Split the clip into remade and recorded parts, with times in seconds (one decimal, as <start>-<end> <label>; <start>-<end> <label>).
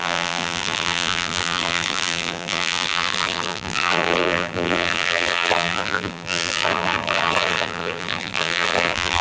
0.0-9.2 remade